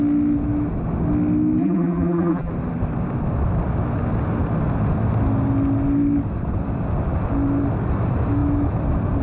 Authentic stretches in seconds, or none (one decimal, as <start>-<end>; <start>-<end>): 0.0-1.6; 2.5-9.2